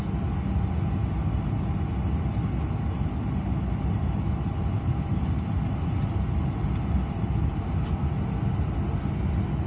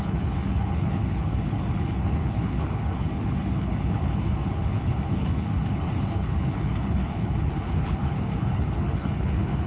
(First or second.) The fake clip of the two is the second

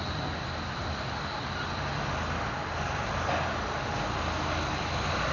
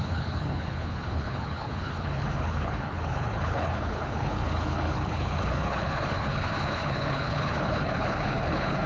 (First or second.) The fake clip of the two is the second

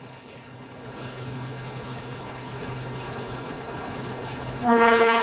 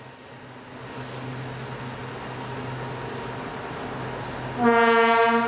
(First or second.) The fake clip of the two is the first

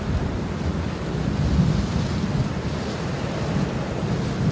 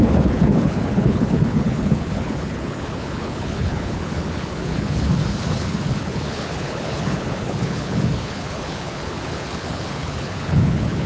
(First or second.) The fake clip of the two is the second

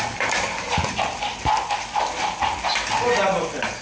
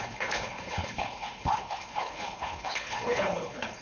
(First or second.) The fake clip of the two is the second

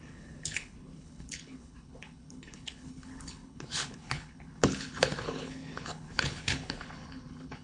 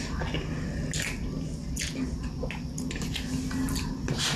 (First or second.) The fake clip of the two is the first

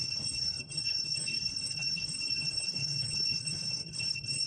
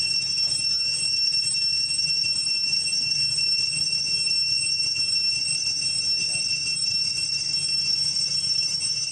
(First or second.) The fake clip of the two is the first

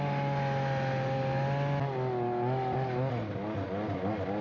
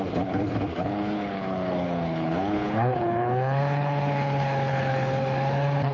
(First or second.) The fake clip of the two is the second